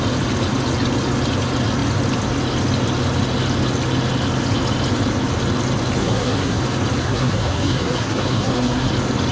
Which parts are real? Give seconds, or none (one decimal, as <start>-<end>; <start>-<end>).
0.0-6.0; 6.6-7.0; 8.9-9.3